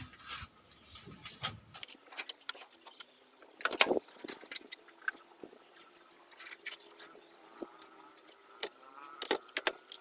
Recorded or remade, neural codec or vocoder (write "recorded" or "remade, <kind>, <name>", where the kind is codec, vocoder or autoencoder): recorded